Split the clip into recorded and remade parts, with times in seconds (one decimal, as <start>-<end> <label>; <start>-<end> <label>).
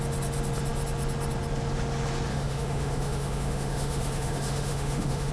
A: 0.0-2.3 recorded; 2.3-5.3 remade